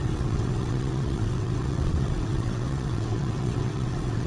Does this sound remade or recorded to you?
remade